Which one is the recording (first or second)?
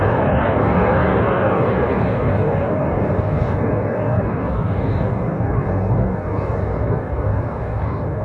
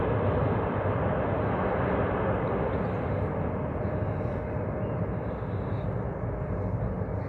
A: second